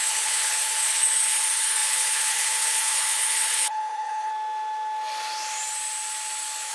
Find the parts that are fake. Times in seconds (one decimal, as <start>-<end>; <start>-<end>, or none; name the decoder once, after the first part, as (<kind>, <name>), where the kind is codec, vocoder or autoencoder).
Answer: 0.0-4.3 (codec, HILCodec)